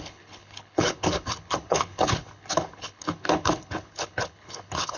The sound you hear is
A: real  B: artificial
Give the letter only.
B